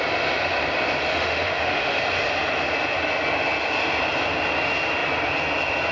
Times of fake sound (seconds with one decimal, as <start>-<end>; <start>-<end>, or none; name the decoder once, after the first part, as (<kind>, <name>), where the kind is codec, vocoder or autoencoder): 1.1-2.0 (autoencoder, DAC-VAE)